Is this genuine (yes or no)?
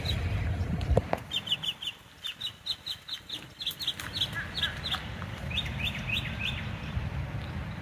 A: yes